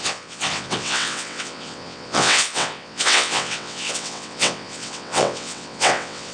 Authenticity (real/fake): fake